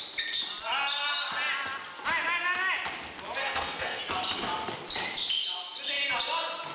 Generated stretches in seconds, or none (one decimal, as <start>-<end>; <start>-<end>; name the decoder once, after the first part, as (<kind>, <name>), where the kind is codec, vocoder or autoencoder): 3.4-4.0 (codec, SNAC)